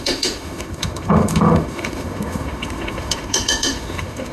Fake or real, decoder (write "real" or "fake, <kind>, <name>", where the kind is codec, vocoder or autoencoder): fake, autoencoder, DAC-VAE